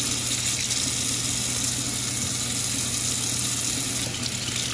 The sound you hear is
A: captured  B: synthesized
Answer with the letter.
A